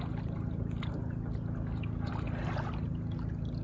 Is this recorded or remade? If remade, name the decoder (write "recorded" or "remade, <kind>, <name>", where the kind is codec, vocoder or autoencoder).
recorded